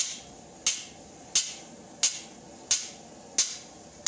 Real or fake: real